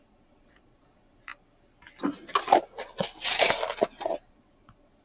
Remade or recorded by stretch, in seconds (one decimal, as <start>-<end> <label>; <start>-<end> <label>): 0.0-1.3 remade; 1.3-4.3 recorded; 4.3-5.0 remade